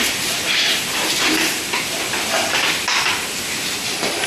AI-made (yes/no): no